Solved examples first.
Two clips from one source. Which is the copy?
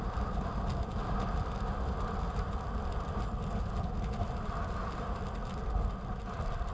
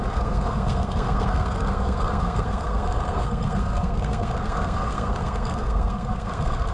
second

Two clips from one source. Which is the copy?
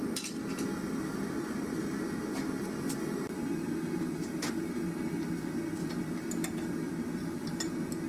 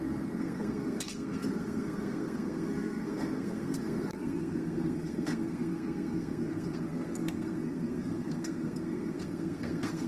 second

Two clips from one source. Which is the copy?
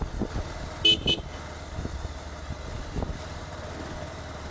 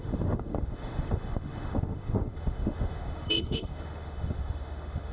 second